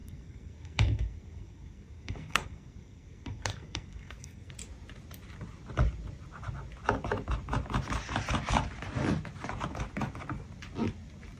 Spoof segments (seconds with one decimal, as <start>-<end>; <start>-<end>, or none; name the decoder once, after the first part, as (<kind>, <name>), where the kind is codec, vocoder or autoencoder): 0.0-4.5 (codec, SNAC)